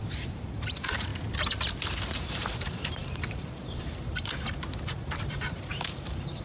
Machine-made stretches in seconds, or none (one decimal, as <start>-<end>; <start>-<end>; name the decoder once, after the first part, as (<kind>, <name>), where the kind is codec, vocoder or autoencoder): 0.0-1.1 (vocoder, BigVGAN v2); 2.3-6.4